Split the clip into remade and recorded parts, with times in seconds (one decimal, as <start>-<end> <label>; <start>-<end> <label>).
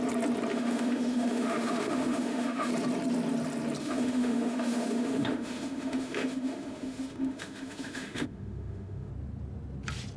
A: 0.0-0.5 recorded; 0.5-2.7 remade; 2.7-3.8 recorded; 3.8-9.1 remade; 9.1-10.2 recorded